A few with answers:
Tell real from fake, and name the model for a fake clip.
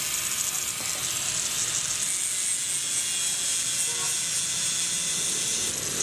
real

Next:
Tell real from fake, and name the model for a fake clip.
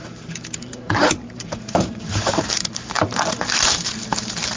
fake, vocoder, BigVGAN v2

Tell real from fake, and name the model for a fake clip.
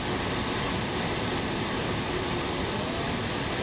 fake, vocoder, BigVGAN v2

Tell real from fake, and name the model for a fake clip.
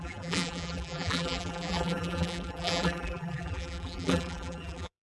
fake, vocoder, BigVGAN v2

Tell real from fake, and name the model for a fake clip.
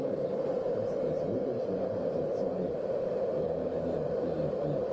fake, vocoder, BigVGAN v2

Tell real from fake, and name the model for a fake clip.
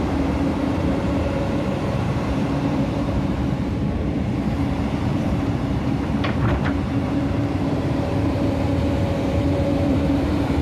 fake, vocoder, BigVGAN v2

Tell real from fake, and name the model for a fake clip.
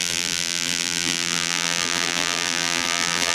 fake, vocoder, BigVGAN v2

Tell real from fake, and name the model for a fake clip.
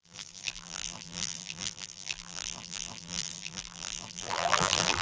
fake, vocoder, BigVGAN v2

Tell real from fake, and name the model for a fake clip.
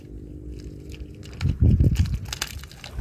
real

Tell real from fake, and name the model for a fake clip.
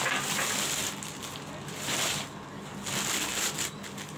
real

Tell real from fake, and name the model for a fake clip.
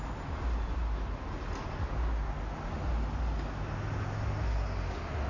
real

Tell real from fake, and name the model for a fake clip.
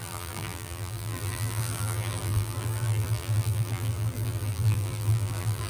fake, vocoder, BigVGAN v2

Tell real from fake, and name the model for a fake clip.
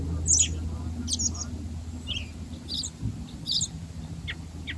real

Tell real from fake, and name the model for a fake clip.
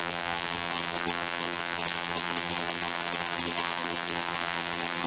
fake, vocoder, BigVGAN v2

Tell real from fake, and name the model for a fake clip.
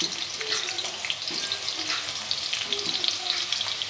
real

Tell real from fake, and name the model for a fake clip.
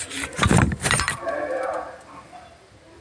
fake, vocoder, BigVGAN v2